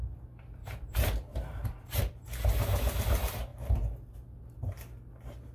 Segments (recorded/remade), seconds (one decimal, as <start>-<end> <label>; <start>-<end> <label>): 0.0-0.6 recorded; 0.6-2.0 remade; 2.0-5.5 recorded